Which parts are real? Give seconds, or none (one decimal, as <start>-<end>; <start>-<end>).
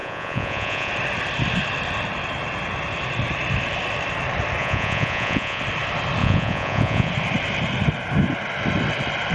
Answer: 0.9-4.6; 5.6-6.2; 7.1-9.3